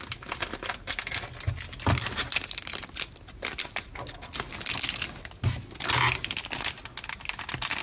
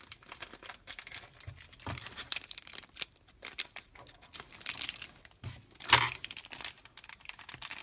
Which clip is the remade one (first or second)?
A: second